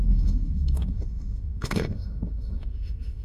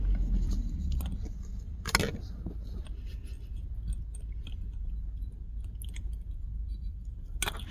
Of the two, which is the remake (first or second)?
first